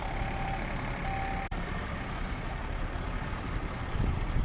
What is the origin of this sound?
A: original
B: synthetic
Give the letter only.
A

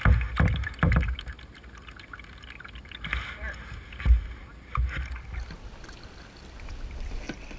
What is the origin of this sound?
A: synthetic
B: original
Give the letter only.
B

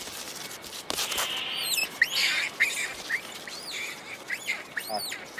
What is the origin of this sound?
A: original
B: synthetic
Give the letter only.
A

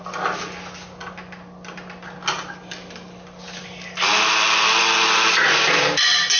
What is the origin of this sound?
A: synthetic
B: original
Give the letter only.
B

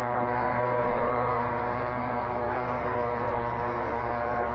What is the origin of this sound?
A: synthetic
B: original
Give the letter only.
A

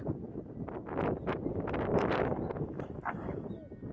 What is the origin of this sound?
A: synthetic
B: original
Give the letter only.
B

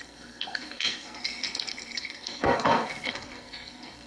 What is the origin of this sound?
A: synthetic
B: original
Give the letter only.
A